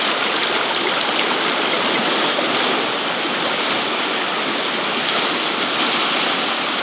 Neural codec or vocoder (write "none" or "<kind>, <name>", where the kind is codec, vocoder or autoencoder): none